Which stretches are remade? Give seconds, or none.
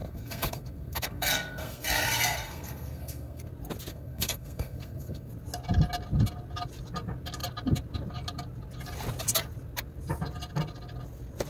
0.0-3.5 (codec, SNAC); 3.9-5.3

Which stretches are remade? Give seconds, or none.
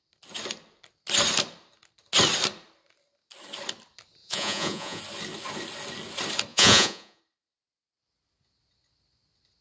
4.2-5.0 (vocoder, Vocos); 6.5-7.2